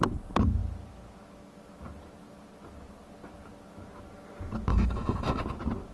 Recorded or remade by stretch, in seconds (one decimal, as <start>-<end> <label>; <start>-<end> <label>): 0.0-4.7 recorded; 4.7-5.4 remade; 5.4-5.9 recorded